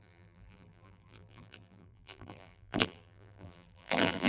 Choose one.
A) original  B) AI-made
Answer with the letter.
B